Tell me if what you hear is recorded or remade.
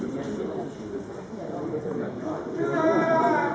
remade